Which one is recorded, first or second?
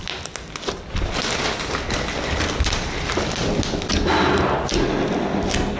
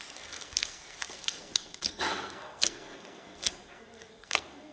first